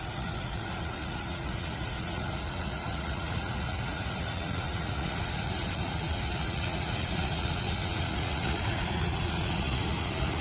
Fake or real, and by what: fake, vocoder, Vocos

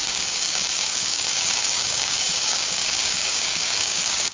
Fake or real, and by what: fake, codec, DAC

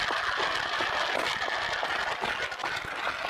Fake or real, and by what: real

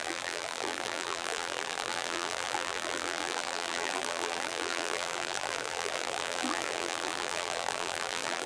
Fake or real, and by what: fake, vocoder, BigVGAN v2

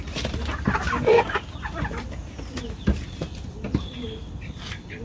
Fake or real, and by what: fake, vocoder, BigVGAN v2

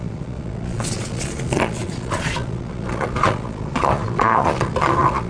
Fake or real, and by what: fake, vocoder, Vocos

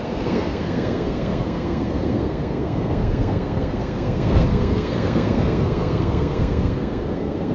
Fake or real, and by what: fake, codec, SNAC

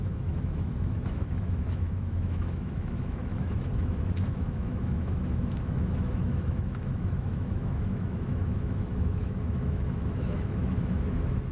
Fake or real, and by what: fake, autoencoder, DAC-VAE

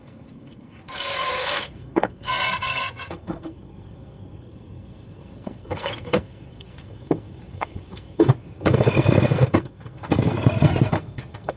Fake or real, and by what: fake, codec, SNAC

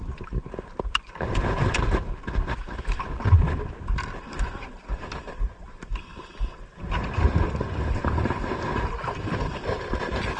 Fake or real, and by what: real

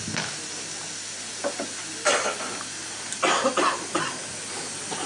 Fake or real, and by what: real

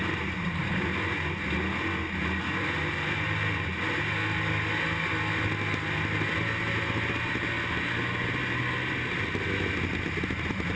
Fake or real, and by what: real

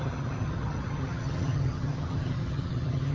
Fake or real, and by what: fake, vocoder, HiFi-GAN